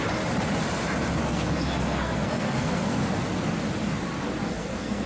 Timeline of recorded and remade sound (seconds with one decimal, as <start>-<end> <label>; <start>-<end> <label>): 0.0-1.2 recorded; 1.2-3.2 remade; 3.2-4.4 recorded; 4.4-5.1 remade